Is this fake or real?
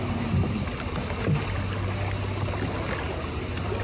real